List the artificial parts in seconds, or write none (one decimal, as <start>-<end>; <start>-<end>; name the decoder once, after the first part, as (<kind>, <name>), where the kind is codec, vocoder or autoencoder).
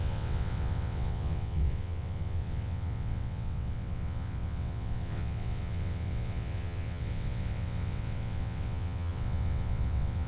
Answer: 0.0-10.3 (vocoder, WaveNeXt)